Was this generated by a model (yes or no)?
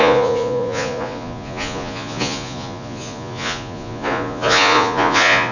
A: yes